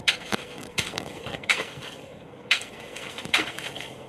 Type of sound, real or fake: fake